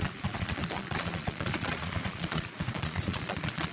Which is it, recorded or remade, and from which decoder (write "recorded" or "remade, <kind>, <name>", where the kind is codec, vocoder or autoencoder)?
remade, vocoder, Vocos